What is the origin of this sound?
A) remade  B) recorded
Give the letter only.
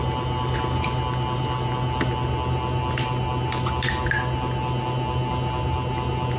B